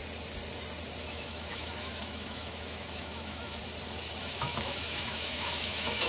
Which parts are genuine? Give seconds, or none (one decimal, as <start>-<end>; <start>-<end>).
0.0-1.1; 3.6-4.2